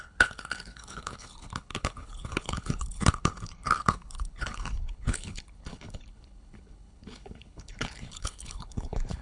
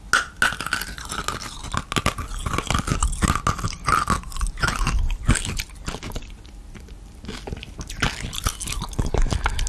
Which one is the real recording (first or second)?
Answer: second